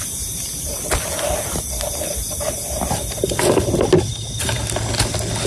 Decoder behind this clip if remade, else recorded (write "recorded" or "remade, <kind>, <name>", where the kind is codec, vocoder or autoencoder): recorded